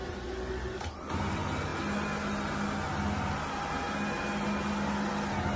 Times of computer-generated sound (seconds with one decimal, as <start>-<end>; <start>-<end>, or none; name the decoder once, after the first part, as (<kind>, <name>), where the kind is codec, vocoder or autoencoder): none

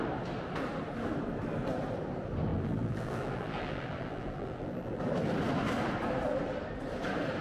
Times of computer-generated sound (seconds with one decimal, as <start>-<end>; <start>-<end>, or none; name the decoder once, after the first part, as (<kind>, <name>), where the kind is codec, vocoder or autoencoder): 2.5-5.0 (vocoder, BigVGAN v2)

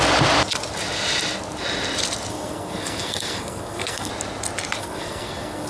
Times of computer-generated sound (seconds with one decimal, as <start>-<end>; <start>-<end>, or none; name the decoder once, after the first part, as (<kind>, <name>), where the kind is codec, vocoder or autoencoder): 2.3-4.1 (codec, SNAC); 4.8-5.7

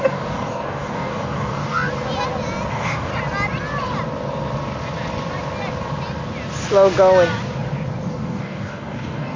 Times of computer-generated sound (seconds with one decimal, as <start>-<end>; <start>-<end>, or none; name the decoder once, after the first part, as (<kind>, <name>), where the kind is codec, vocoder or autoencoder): 0.0-1.9 (codec, DAC); 2.7-3.1; 8.1-9.4

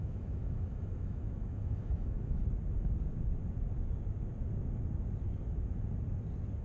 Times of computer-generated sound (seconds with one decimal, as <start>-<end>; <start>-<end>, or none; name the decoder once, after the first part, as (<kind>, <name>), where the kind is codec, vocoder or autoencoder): 0.0-2.4 (autoencoder, DAC-VAE)

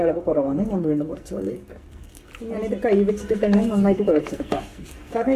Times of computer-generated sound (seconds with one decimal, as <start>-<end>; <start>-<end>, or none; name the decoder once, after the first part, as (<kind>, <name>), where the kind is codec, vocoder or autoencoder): 0.0-2.3 (codec, SNAC); 3.1-5.4